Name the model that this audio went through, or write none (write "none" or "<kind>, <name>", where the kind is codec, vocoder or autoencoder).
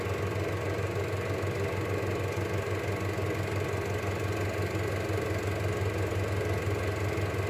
none